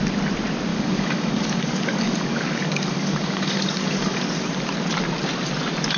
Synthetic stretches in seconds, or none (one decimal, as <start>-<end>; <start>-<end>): 0.7-4.3